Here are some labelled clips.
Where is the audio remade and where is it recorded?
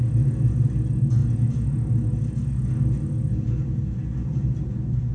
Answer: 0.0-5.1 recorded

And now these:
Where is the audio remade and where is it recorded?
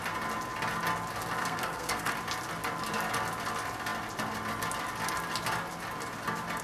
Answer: 0.0-1.4 recorded; 1.4-2.1 remade; 2.1-6.6 recorded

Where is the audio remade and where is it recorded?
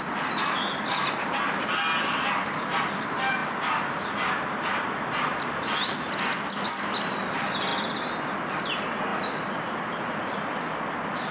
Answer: 0.0-11.3 recorded